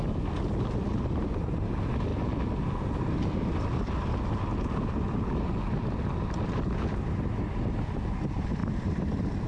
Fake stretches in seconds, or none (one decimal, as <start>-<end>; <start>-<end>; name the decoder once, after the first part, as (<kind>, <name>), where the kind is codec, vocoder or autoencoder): 8.6-9.5 (vocoder, BigVGAN v2)